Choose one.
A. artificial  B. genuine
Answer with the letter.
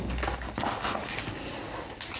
B